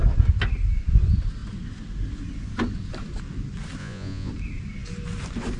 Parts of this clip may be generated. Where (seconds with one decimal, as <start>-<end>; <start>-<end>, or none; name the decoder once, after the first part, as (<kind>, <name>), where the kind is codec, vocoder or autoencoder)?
3.8-4.3 (vocoder, Vocos)